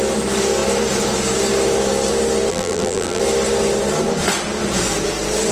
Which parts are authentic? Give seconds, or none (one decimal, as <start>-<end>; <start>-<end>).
0.0-2.5; 3.2-5.5